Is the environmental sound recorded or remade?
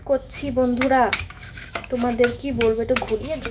remade